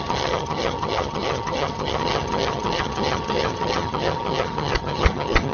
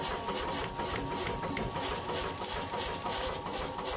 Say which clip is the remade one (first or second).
first